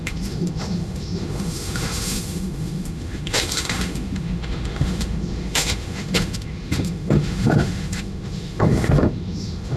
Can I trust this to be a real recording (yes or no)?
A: no